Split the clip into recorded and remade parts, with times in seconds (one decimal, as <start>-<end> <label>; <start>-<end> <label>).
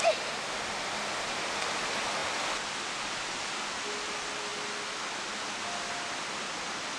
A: 0.0-7.0 recorded